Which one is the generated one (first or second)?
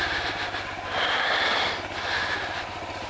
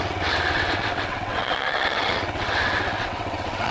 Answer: second